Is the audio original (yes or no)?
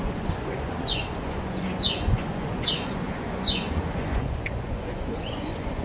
no